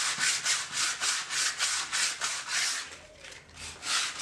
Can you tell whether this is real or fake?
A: real